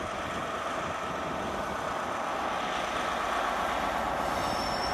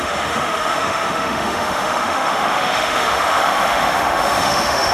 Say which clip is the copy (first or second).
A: second